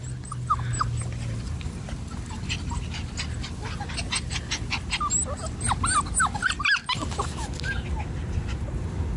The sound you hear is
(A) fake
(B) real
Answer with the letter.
B